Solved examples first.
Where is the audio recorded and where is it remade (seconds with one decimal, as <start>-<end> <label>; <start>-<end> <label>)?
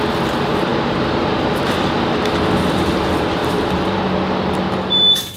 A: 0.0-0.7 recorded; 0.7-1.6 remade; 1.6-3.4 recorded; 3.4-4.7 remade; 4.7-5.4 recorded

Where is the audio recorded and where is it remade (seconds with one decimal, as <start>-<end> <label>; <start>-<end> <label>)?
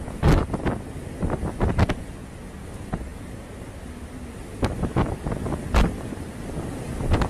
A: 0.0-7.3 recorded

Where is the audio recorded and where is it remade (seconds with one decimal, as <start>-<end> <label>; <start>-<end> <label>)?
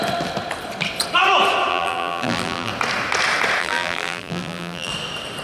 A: 0.0-1.7 recorded; 1.7-2.7 remade; 2.7-3.6 recorded; 3.6-4.9 remade; 4.9-5.4 recorded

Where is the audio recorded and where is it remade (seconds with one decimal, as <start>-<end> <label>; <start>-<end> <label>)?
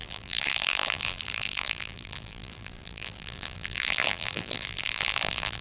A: 0.0-5.6 remade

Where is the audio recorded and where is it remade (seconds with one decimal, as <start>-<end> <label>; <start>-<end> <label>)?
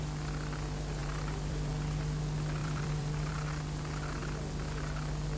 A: 0.0-1.0 recorded; 1.0-1.7 remade; 1.7-2.6 recorded; 2.6-3.3 remade; 3.3-5.4 recorded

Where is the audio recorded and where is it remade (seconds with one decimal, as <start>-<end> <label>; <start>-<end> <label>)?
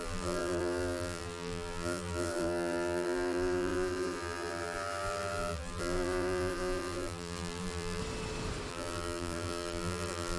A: 0.0-8.0 remade; 8.0-8.7 recorded; 8.7-10.4 remade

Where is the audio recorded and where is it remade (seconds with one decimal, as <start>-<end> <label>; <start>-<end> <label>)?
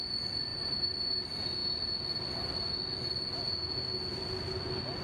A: 0.0-0.5 recorded; 0.5-1.2 remade; 1.2-5.0 recorded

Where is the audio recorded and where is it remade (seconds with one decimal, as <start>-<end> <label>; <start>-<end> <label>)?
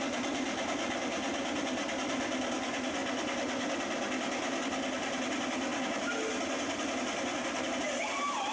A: 0.0-3.0 remade; 3.0-5.2 recorded; 5.2-5.7 remade; 5.7-7.8 recorded; 7.8-8.5 remade